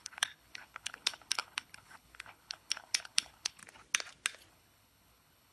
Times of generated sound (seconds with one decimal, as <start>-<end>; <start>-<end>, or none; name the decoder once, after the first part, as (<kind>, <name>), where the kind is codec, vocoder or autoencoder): 0.0-3.6 (codec, HILCodec); 4.5-5.5